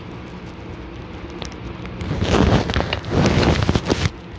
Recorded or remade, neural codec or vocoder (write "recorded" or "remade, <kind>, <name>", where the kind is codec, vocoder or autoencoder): recorded